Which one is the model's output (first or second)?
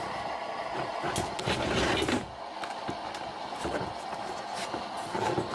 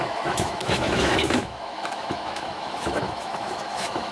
second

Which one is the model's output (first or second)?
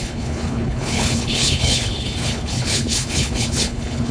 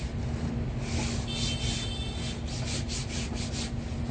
first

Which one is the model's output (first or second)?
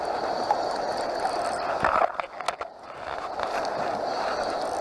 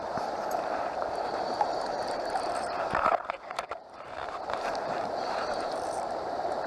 second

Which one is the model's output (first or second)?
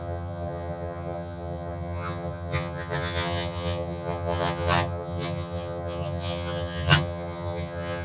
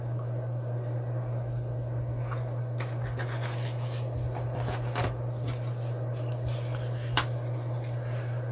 first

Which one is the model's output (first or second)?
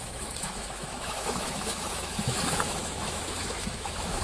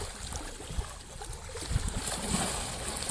first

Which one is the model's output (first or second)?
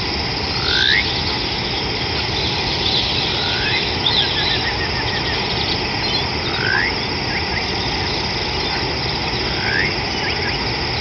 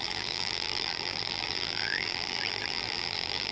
second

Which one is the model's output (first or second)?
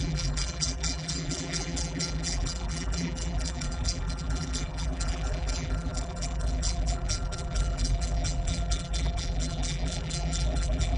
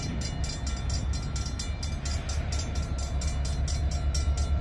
first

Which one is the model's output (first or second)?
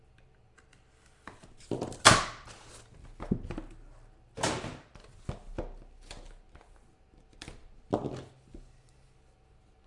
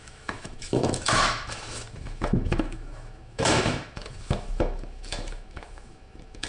second